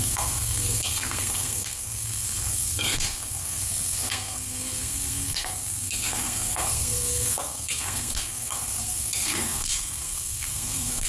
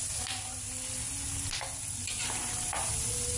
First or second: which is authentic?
second